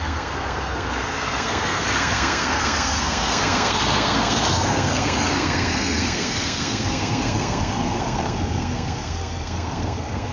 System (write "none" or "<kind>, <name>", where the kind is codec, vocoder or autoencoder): codec, SNAC